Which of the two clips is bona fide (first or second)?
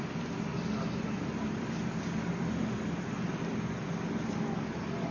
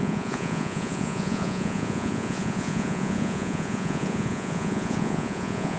first